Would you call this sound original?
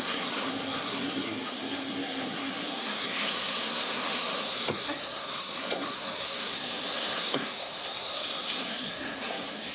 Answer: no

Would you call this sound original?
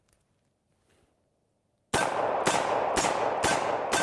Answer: yes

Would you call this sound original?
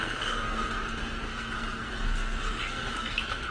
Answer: no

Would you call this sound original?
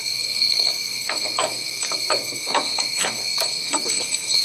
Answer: no